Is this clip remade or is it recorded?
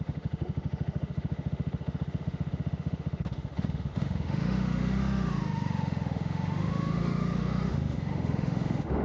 remade